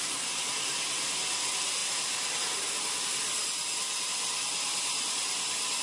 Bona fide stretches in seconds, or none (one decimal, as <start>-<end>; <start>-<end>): 0.0-5.8